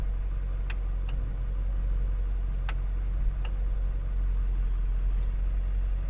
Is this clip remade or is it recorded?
recorded